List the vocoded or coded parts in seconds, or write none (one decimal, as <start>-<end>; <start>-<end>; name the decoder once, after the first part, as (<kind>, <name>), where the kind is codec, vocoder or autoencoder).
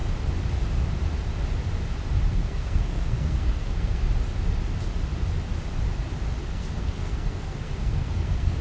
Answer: 2.3-4.0 (codec, SNAC); 6.4-8.6